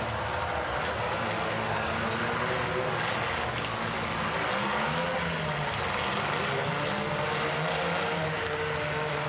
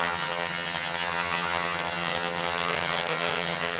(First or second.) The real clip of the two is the first